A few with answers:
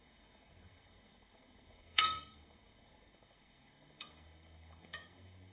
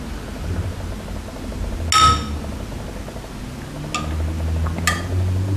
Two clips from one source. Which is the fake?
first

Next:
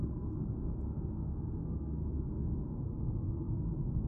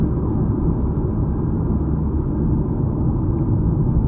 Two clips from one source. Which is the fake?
first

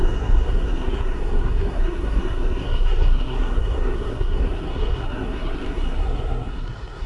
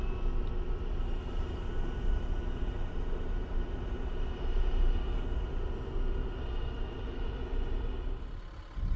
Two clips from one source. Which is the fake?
first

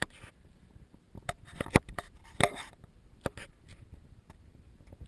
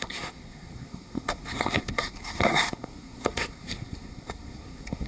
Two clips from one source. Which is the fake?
second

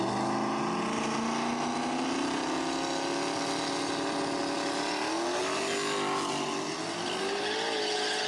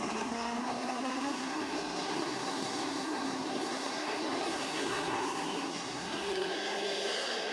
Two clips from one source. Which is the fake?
second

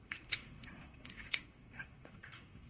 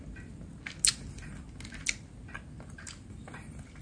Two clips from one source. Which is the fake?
first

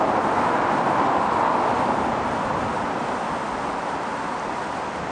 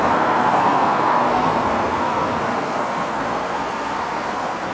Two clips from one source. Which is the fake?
second